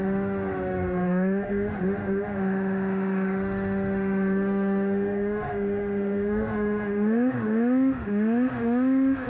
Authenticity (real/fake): fake